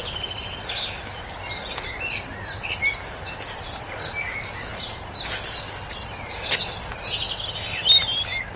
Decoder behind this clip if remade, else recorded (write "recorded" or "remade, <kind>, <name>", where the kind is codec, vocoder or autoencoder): recorded